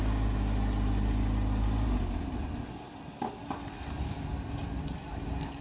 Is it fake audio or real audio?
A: real